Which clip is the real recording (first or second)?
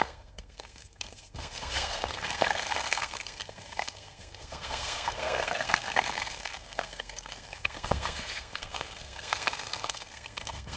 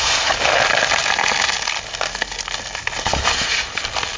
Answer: second